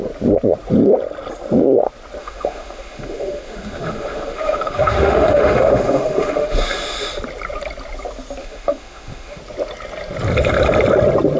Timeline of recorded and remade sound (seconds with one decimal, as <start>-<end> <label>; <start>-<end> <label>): 0.0-2.2 recorded; 2.2-7.1 remade; 7.1-8.4 recorded; 8.4-9.4 remade; 9.4-11.4 recorded